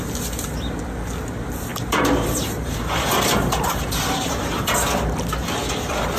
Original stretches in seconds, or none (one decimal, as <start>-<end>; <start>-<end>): 0.0-1.7; 4.6-6.2